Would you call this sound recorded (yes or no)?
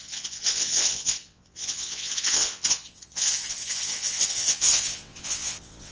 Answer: no